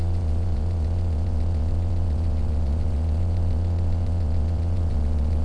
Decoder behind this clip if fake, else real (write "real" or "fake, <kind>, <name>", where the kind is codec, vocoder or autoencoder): fake, vocoder, Vocos